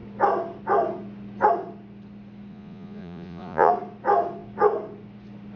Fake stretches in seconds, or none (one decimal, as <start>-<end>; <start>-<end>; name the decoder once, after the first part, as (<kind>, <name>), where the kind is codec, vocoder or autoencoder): 2.5-3.7 (vocoder, Vocos)